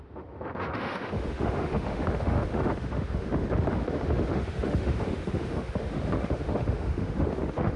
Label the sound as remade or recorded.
remade